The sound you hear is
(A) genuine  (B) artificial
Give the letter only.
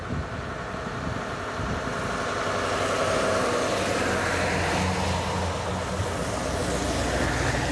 A